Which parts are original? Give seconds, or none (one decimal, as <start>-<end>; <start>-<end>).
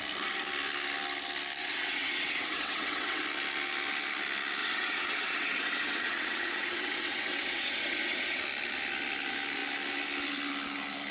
0.0-1.6; 3.2-4.6; 8.4-11.1